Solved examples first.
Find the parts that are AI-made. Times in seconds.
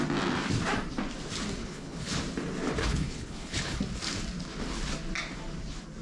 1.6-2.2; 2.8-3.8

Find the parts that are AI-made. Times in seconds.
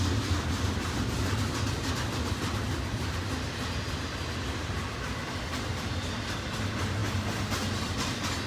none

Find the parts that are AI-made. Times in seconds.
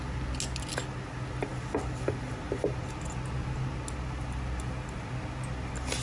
none